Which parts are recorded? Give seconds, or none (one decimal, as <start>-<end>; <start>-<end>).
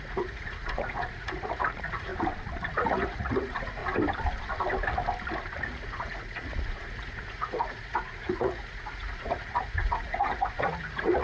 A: 2.1-2.7; 3.8-5.6